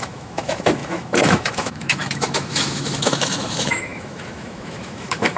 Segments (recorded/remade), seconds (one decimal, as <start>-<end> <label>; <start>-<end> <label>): 0.0-5.4 remade